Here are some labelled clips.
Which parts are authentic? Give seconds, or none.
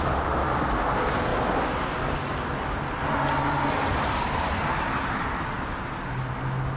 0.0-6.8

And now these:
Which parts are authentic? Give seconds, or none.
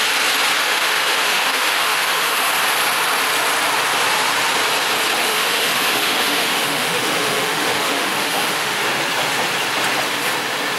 0.0-0.6; 2.5-5.2; 8.8-10.8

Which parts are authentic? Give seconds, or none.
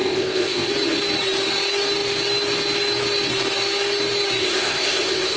0.7-4.4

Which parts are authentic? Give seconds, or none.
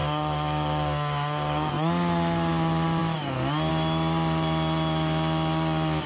1.7-6.1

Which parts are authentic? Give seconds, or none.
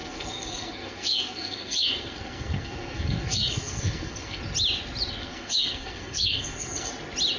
4.4-5.2; 6.9-7.4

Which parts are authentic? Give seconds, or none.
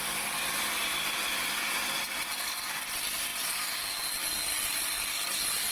0.0-0.8; 1.8-5.7